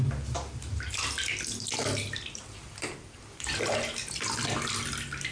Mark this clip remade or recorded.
recorded